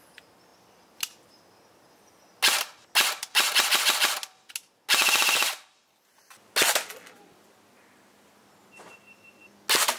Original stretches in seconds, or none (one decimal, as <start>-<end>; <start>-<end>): 0.0-10.0

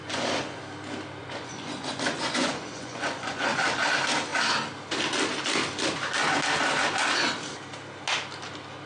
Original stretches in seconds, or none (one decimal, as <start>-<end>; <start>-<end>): 0.6-1.2; 3.8-8.9